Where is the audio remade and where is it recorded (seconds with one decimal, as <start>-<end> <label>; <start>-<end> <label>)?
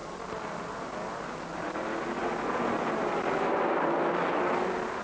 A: 0.0-5.0 recorded